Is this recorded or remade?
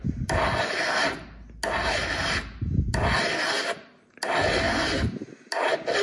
recorded